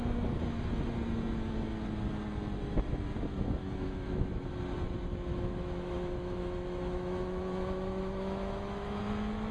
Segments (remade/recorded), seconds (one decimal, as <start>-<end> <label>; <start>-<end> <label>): 0.0-3.6 recorded; 3.6-4.5 remade; 4.5-5.3 recorded; 5.3-9.0 remade; 9.0-9.5 recorded